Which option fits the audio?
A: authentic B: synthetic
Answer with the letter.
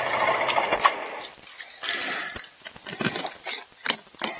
A